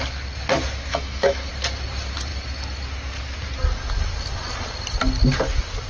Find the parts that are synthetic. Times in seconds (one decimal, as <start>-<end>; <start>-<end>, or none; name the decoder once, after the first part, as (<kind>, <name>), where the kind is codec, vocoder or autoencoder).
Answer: 0.9-1.5 (autoencoder, DAC-VAE)